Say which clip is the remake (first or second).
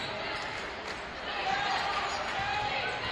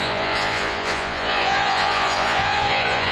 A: second